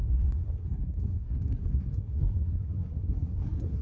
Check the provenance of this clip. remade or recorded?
remade